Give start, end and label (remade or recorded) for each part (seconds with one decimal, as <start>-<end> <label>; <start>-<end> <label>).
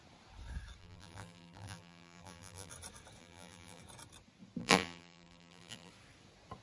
0.0-0.8 recorded; 0.8-2.7 remade; 2.7-3.2 recorded; 3.2-3.8 remade; 3.8-4.6 recorded; 4.6-5.9 remade; 5.9-6.6 recorded